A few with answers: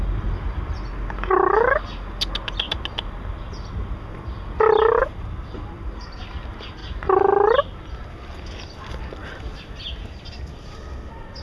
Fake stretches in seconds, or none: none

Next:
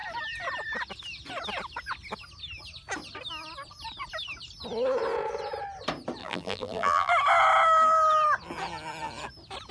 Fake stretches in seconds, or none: 6.2-7.1 (vocoder, BigVGAN v2)

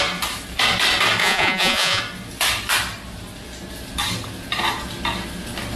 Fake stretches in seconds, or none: 1.2-2.0 (vocoder, Vocos)

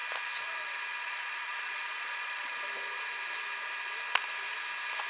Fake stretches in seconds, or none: 1.0-2.5 (vocoder, Vocos)